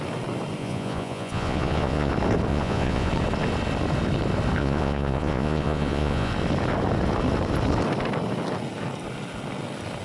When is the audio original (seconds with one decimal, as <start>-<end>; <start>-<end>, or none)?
0.0-0.6; 2.1-2.5; 3.1-4.6; 6.3-10.0